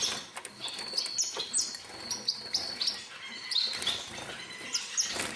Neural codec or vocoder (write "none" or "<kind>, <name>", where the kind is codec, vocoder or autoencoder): none